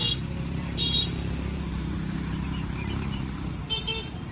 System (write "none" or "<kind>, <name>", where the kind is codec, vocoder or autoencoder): vocoder, BigVGAN v2